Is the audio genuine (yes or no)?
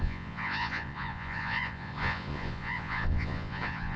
no